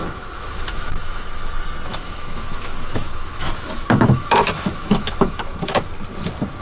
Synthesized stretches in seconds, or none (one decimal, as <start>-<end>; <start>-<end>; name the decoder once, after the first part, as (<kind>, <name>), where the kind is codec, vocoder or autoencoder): 0.0-1.4 (autoencoder, DAC-VAE); 1.9-5.9